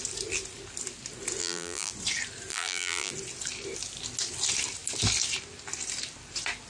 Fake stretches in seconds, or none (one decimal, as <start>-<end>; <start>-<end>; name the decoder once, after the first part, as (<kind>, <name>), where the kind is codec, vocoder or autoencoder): 1.4-1.9 (vocoder, BigVGAN v2); 2.5-3.1